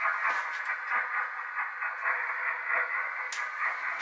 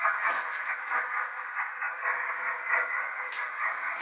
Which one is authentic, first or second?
first